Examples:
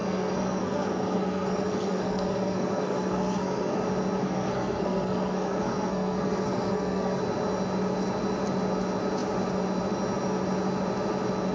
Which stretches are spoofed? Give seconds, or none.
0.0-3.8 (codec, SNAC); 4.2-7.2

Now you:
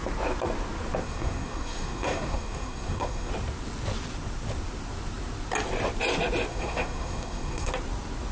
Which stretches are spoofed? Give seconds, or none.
1.0-3.3 (codec, SNAC); 6.5-7.7

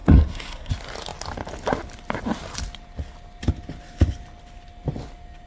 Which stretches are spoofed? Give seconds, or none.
0.0-0.7 (codec, SNAC)

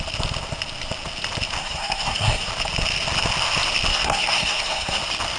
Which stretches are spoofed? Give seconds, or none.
1.6-2.5 (codec, SNAC); 3.9-5.0

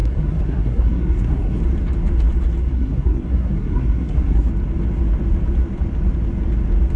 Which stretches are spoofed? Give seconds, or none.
0.0-1.6 (codec, SNAC); 2.6-4.5

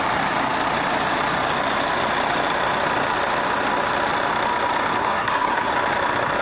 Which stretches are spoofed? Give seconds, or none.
5.0-5.7 (codec, SNAC)

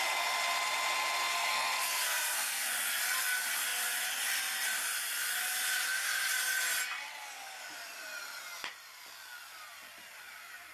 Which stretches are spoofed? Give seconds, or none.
1.3-2.7 (codec, SNAC)